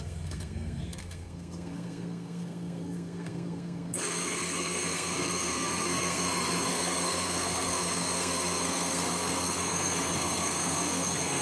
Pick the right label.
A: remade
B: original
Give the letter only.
A